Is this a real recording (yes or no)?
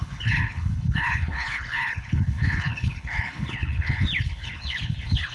no